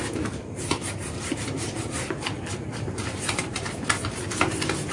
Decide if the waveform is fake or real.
real